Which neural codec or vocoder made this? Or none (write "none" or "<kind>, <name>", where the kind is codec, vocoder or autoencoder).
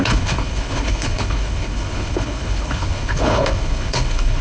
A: codec, HILCodec